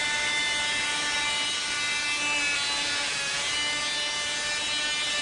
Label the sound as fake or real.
real